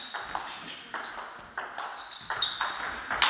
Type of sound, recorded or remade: recorded